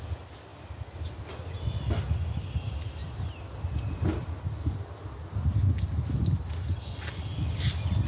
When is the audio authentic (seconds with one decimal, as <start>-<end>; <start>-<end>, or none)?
0.0-8.1